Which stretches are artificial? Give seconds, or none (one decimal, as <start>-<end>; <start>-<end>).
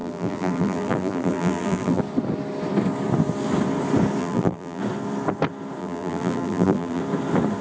0.0-2.0; 4.2-4.8; 5.8-7.0